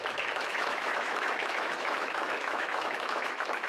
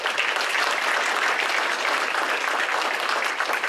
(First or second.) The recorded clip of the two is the second